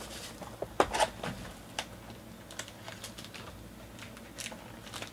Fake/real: real